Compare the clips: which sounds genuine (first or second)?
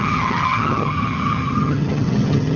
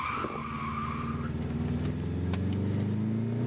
second